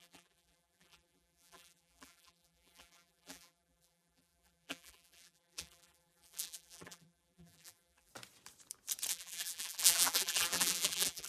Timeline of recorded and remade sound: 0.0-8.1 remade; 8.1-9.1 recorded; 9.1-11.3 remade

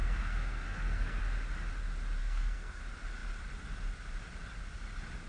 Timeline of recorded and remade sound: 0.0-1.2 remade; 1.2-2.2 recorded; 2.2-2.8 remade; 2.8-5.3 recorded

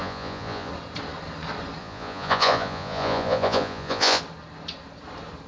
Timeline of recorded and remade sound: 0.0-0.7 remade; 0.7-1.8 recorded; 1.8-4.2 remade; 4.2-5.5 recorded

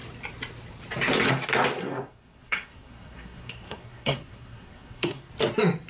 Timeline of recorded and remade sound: 0.0-1.8 recorded; 1.8-5.3 remade; 5.3-5.9 recorded

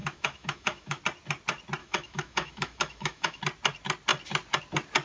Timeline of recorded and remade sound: 0.0-1.0 remade; 1.0-1.8 recorded; 1.8-3.4 remade; 3.4-5.0 recorded

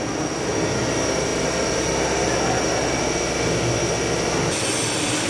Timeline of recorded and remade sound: 0.0-5.3 recorded